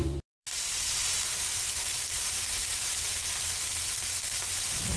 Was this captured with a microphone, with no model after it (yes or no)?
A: no